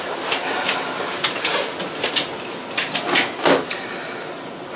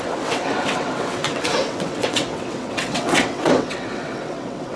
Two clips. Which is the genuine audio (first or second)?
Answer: first